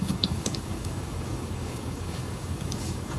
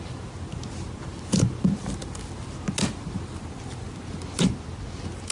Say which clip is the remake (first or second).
first